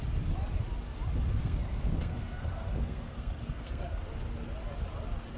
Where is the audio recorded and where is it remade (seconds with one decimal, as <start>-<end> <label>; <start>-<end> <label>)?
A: 0.0-1.4 recorded; 1.4-4.0 remade; 4.0-5.4 recorded